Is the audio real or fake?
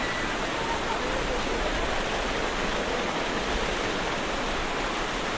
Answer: real